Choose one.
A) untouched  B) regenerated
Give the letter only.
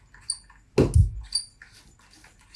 A